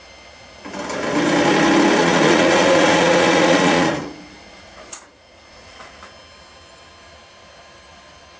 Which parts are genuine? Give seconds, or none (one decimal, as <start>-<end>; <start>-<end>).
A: 0.0-2.0; 6.0-8.4

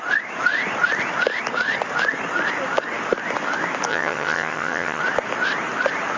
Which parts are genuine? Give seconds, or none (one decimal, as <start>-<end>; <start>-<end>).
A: 0.0-3.9; 5.0-6.2